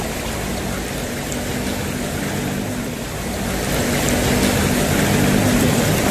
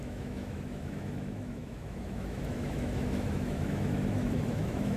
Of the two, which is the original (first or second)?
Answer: first